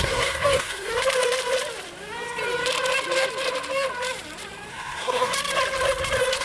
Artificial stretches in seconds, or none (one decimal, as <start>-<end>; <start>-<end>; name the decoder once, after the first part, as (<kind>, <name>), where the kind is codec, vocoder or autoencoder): 0.0-0.9 (codec, SNAC); 4.7-5.3